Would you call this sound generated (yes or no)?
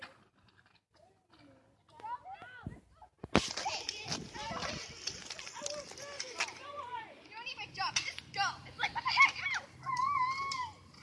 no